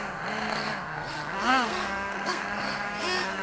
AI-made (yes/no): yes